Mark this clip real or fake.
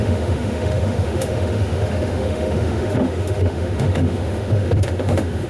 fake